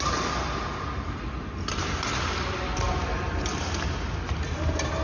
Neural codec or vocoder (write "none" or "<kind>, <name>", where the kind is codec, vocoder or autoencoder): none